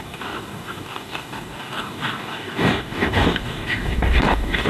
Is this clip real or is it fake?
fake